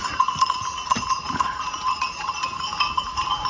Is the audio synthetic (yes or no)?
yes